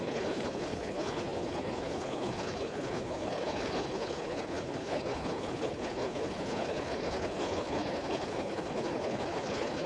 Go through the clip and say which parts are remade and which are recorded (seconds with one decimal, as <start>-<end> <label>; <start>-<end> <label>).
0.0-9.9 remade